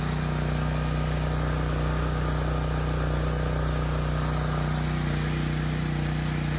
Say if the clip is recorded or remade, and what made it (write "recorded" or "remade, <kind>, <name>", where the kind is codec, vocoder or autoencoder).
recorded